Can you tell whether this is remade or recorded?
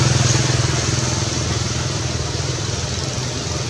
recorded